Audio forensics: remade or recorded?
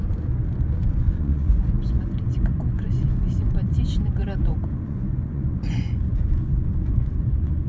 remade